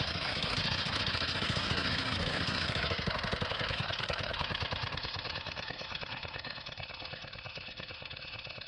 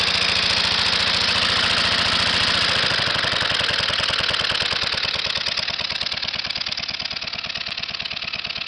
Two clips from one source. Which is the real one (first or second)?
second